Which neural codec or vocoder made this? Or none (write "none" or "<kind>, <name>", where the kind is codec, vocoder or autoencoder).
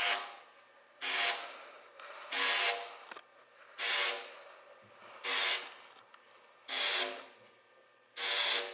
none